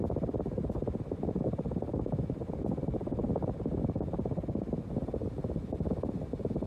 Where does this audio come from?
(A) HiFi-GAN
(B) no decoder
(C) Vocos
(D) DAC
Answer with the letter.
B